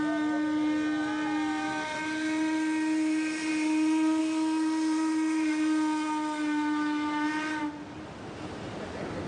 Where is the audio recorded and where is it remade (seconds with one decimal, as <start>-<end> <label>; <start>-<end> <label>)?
0.0-9.3 recorded